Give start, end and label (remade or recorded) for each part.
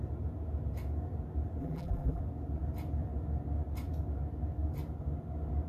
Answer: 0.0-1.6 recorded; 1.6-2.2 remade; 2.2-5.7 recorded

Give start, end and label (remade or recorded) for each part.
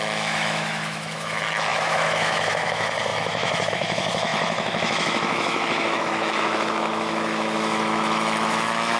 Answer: 0.0-9.0 remade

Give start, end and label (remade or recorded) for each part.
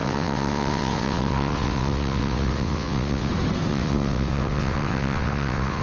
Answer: 0.0-3.3 remade; 3.3-3.7 recorded; 3.7-5.8 remade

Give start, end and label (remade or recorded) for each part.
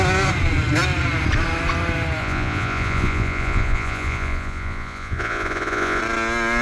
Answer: 0.0-2.2 recorded; 2.2-6.0 remade; 6.0-6.6 recorded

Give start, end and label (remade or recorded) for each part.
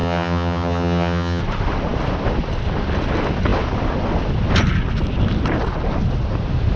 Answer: 0.0-1.4 remade; 1.4-6.8 recorded